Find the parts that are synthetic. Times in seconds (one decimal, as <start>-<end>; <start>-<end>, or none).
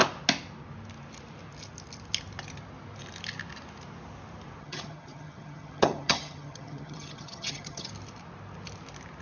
4.6-7.9